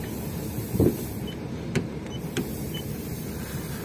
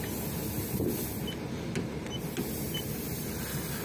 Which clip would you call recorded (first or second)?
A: second